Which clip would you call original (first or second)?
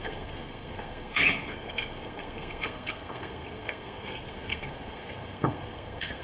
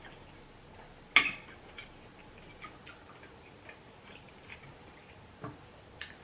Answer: second